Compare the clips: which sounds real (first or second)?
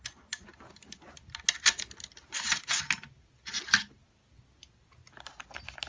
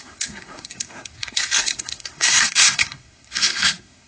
first